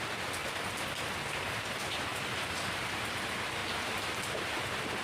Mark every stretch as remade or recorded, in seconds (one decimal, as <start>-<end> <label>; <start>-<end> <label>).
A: 0.0-2.1 recorded; 2.1-3.0 remade; 3.0-3.6 recorded; 3.6-4.2 remade; 4.2-5.0 recorded